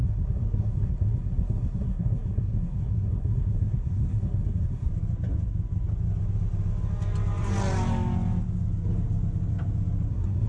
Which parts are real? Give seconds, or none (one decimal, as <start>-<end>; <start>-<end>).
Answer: 4.9-10.1